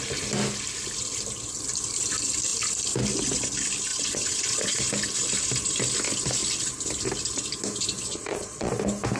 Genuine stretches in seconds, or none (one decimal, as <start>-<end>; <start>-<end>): 0.0-3.9; 4.8-8.0; 8.7-9.2